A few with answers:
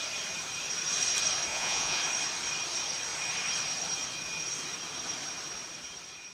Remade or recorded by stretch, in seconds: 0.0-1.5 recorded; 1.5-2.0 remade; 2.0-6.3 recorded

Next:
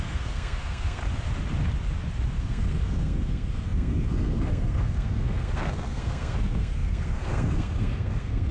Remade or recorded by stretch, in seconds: 0.0-1.0 remade; 1.0-2.4 recorded; 2.4-8.5 remade

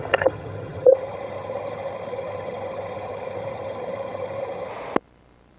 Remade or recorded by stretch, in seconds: 0.0-4.7 remade; 4.7-5.6 recorded

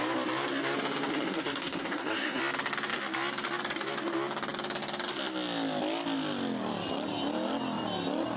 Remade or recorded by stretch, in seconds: 0.0-1.1 recorded; 1.1-2.4 remade; 2.4-8.4 recorded

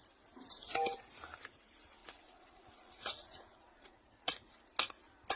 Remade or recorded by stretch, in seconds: 0.0-2.0 recorded; 2.0-4.6 remade; 4.6-5.4 recorded

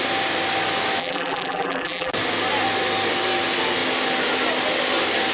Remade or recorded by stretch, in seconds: 0.0-1.0 recorded; 1.0-2.1 remade; 2.1-5.3 recorded

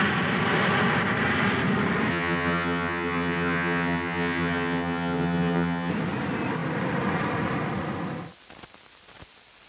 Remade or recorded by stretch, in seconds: 0.0-2.1 recorded; 2.1-5.9 remade; 5.9-9.7 recorded